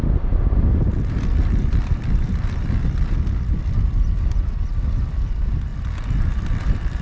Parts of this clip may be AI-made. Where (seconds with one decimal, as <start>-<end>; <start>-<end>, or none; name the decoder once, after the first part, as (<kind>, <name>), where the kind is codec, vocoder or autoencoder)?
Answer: 0.9-4.7 (vocoder, BigVGAN v2); 5.7-7.0